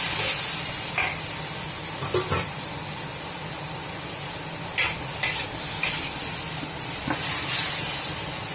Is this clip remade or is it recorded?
recorded